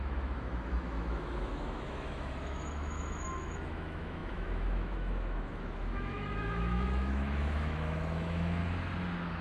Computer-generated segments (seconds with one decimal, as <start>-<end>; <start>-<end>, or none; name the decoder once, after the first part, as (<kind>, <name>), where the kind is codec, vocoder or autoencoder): 0.0-8.6 (autoencoder, DAC-VAE)